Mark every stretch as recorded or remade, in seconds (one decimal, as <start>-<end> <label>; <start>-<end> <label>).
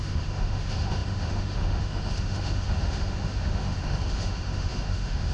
0.0-5.3 remade